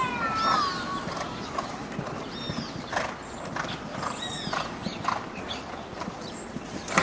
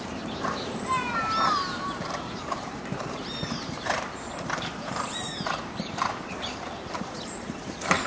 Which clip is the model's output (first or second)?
second